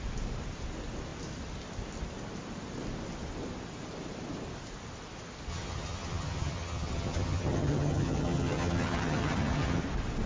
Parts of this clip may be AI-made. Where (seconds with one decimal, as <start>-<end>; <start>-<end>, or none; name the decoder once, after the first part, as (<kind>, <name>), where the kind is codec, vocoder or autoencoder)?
5.5-9.8 (vocoder, HiFi-GAN)